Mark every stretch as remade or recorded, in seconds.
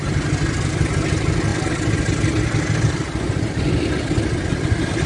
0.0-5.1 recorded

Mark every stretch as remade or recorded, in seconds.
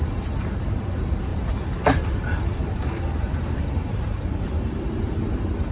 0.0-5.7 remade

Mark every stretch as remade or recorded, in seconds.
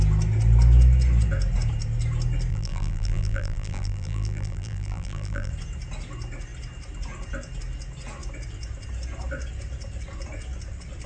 0.0-2.5 recorded; 2.5-5.5 remade; 5.5-11.1 recorded